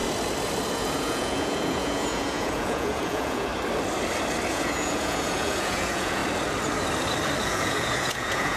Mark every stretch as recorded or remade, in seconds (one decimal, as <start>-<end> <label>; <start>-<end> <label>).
0.0-0.7 recorded; 0.7-3.5 remade; 3.5-4.5 recorded; 4.5-6.2 remade; 6.2-7.4 recorded; 7.4-8.6 remade